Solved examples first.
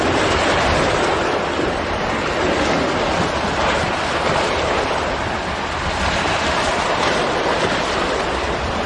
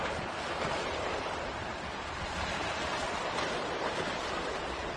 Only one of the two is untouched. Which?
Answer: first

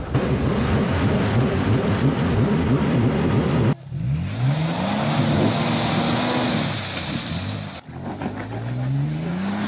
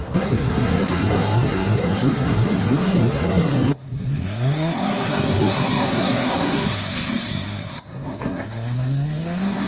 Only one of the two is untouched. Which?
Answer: first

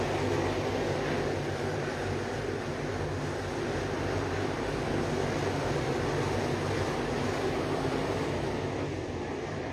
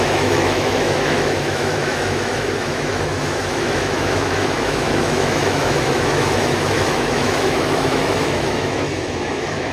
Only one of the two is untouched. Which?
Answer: first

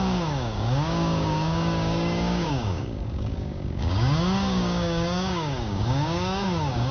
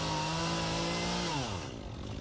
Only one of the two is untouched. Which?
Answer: second